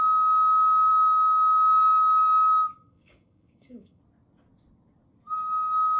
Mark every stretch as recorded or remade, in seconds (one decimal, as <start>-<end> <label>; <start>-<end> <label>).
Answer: 0.0-0.9 recorded; 0.9-4.0 remade; 4.0-6.0 recorded